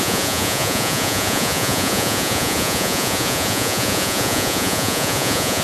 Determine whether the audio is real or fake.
fake